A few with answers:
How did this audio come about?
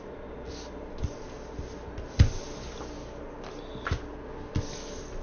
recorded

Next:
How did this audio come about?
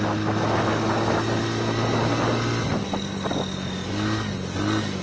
recorded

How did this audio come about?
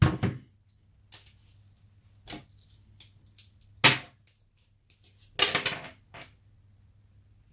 recorded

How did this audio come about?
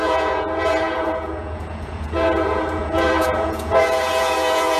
remade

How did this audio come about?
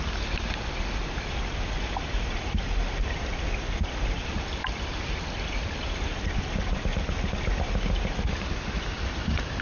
recorded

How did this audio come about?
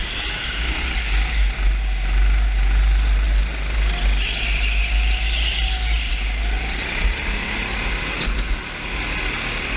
recorded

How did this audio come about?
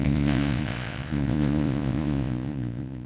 remade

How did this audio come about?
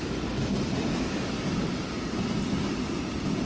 recorded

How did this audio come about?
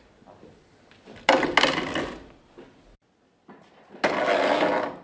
recorded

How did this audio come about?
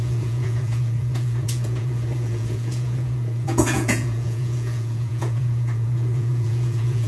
remade